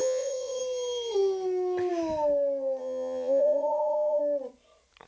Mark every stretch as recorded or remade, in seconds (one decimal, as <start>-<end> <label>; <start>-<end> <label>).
0.0-0.6 remade; 0.6-2.8 recorded; 2.8-4.2 remade; 4.2-5.1 recorded

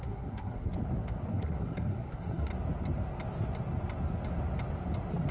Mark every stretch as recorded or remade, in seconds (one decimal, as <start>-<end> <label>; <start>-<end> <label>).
0.0-0.7 remade; 0.7-1.3 recorded; 1.3-2.5 remade; 2.5-5.3 recorded

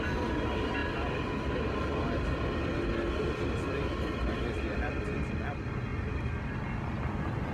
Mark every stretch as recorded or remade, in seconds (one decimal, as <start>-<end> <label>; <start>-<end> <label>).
0.0-7.5 recorded